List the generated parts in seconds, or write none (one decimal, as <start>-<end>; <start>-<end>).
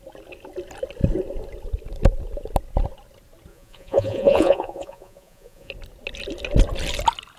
3.5-5.7